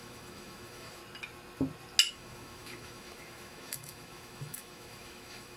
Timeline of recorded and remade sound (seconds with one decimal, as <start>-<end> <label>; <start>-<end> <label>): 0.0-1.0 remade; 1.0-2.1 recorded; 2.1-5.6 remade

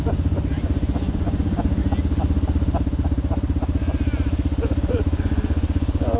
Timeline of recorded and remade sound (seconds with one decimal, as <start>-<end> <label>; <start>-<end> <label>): 0.0-1.8 remade; 1.8-4.9 recorded; 4.9-6.2 remade

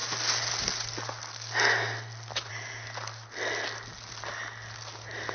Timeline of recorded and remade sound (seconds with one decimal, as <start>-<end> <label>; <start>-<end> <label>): 0.0-5.3 recorded

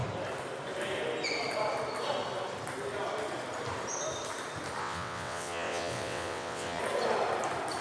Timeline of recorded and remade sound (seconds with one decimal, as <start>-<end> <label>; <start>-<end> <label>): 0.0-4.8 recorded; 4.8-6.8 remade; 6.8-7.8 recorded

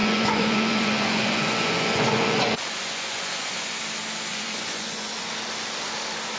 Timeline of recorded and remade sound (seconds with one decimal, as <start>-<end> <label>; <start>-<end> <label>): 0.0-3.8 remade; 3.8-4.3 recorded; 4.3-5.3 remade; 5.3-6.4 recorded